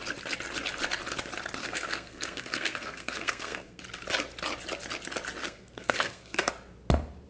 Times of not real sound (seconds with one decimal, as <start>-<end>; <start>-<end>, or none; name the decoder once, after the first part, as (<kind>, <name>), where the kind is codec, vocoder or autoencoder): 1.6-3.8 (codec, SNAC); 5.4-6.5